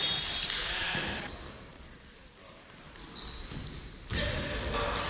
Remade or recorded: recorded